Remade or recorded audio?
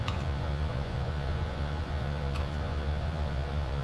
remade